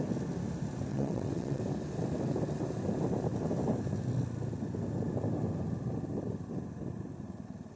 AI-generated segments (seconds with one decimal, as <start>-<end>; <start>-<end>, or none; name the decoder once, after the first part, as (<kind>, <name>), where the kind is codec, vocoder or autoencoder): 0.9-1.6 (vocoder, WaveNeXt)